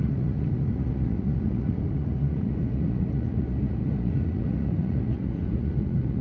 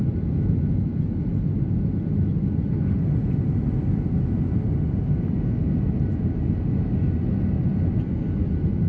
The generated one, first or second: first